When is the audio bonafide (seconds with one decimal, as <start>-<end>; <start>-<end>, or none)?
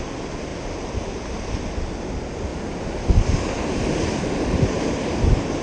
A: 0.0-5.6